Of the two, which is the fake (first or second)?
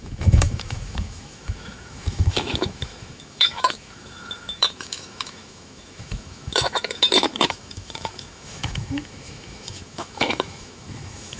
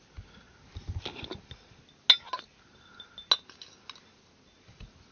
first